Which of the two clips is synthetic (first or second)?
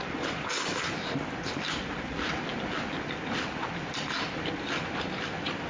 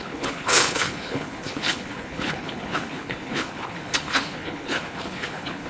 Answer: second